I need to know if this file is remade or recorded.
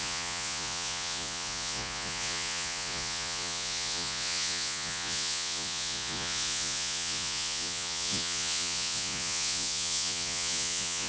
remade